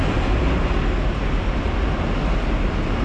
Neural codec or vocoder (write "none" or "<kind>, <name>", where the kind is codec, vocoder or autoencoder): none